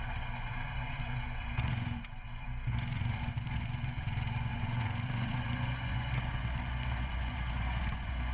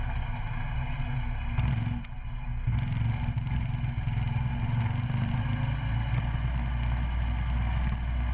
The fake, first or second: first